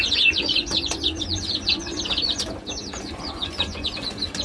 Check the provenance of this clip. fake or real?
fake